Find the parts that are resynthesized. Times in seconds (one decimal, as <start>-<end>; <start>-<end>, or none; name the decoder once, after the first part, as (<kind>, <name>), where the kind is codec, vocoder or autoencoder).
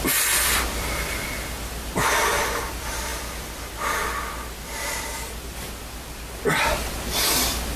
none